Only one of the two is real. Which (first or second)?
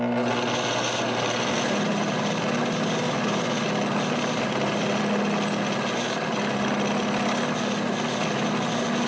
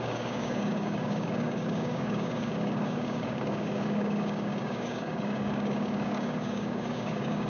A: first